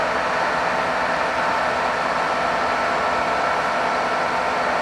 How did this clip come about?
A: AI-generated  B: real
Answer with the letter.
B